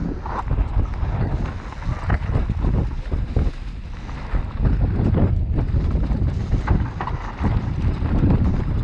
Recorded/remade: recorded